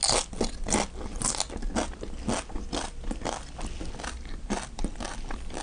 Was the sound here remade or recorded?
recorded